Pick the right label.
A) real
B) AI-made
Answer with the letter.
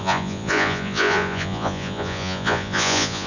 B